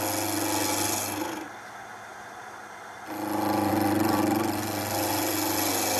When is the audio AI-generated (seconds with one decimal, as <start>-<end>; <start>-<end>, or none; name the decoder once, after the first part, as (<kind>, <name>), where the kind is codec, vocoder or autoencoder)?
none